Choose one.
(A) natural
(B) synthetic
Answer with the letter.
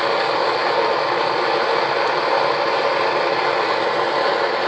B